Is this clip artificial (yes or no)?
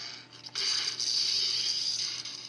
no